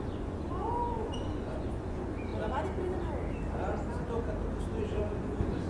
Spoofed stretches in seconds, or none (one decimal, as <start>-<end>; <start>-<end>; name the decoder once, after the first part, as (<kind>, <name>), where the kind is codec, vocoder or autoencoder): 0.0-2.3 (vocoder, Vocos); 4.8-5.7